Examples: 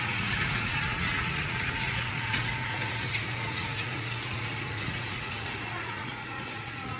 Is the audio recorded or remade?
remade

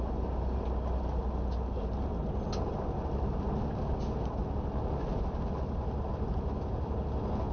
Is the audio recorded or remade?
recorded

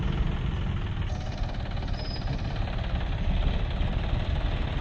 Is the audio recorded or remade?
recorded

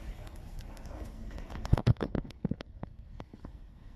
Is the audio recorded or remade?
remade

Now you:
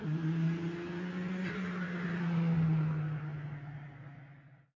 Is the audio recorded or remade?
recorded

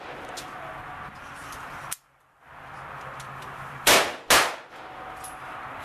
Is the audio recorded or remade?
recorded